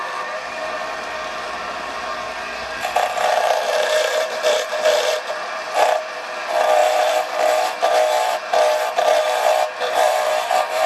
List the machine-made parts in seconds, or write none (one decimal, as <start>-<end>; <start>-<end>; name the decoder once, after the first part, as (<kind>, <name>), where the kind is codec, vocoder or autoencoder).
0.0-10.9 (vocoder, BigVGAN v2)